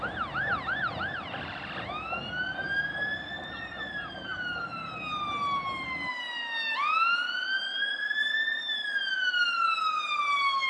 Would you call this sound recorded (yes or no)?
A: yes